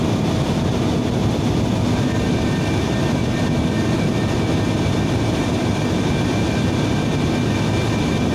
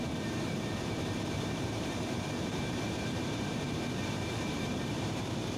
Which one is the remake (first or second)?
second